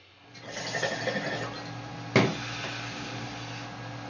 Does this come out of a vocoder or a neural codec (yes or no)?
no